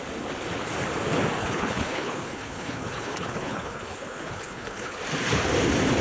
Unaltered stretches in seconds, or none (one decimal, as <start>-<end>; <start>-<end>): 0.0-1.4; 5.0-6.0